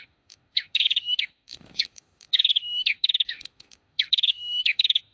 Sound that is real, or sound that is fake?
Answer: fake